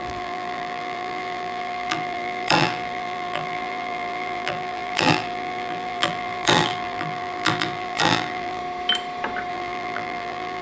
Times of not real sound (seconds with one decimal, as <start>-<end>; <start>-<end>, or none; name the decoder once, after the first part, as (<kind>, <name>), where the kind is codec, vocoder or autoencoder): 0.0-8.6 (vocoder, BigVGAN v2); 9.5-10.6